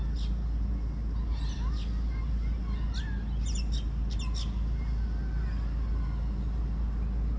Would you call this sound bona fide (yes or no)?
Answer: yes